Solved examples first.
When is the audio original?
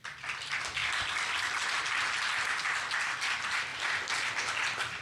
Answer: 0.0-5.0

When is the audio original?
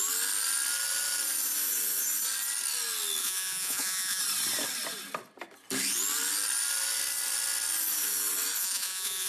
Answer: 0.0-3.2; 4.2-8.6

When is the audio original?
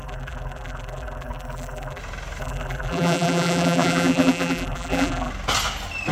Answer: 2.0-2.4; 5.3-6.1